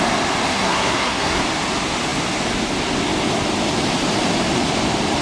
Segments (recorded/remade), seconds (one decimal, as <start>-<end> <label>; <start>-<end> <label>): 0.0-0.5 recorded; 0.5-1.4 remade; 1.4-5.2 recorded

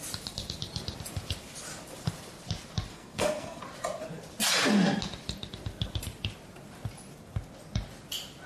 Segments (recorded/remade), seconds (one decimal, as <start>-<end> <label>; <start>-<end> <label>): 0.0-2.9 recorded; 2.9-3.6 remade; 3.6-8.5 recorded

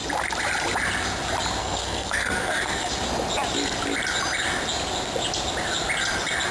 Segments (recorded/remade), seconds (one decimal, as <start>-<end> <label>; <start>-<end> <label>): 0.0-1.6 recorded; 1.6-2.9 remade; 2.9-6.5 recorded

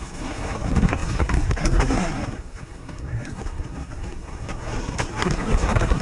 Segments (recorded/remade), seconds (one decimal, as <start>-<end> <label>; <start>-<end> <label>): 0.0-6.0 remade